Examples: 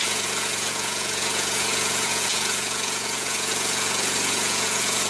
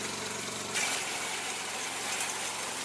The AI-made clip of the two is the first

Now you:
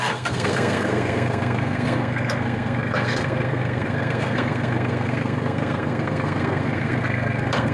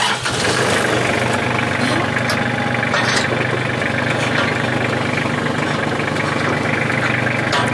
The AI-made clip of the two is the first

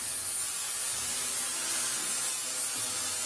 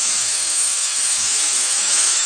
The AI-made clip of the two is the second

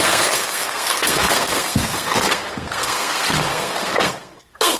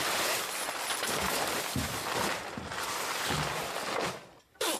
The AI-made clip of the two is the first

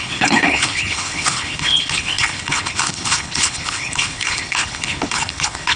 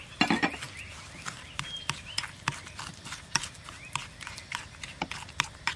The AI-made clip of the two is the first